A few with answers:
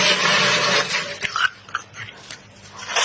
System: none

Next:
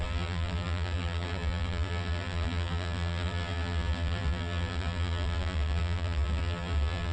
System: vocoder, BigVGAN v2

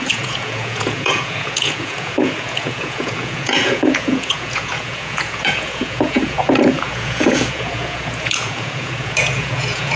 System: vocoder, Vocos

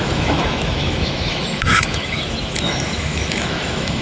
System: autoencoder, DAC-VAE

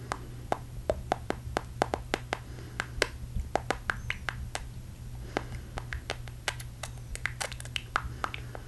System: none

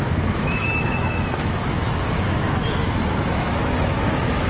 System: autoencoder, DAC-VAE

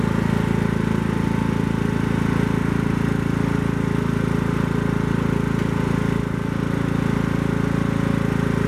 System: none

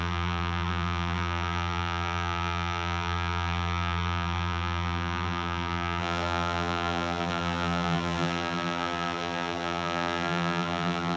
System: vocoder, BigVGAN v2